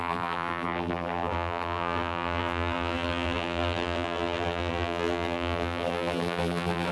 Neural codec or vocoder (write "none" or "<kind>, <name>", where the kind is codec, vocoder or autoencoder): vocoder, BigVGAN v2